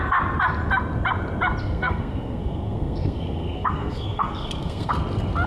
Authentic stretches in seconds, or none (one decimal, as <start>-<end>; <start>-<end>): 0.0-1.6; 4.9-5.5